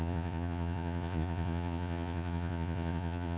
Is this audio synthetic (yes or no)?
yes